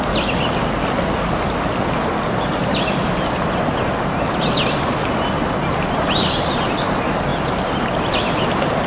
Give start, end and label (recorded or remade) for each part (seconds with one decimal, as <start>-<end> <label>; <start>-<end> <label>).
0.0-8.9 recorded